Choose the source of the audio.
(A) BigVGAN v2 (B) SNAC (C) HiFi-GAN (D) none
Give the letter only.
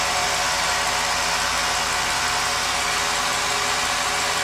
D